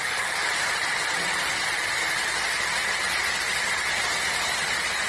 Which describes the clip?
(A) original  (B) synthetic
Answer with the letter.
A